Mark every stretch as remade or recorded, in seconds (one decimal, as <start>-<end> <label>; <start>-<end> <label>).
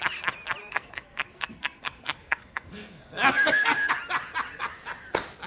0.0-0.6 recorded; 0.6-3.9 remade; 3.9-5.5 recorded